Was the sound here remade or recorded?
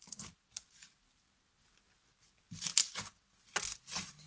recorded